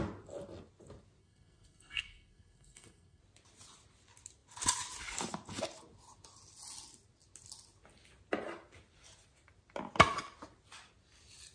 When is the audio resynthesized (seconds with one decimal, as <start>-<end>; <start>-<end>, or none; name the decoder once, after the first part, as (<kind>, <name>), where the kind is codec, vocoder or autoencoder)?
1.2-3.2 (codec, SNAC)